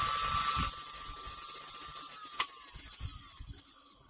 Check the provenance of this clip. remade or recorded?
recorded